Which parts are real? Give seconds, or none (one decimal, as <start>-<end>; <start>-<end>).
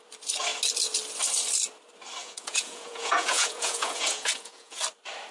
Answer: 0.0-2.2; 4.8-5.3